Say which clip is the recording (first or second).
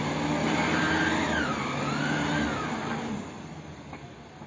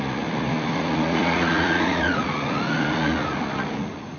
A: first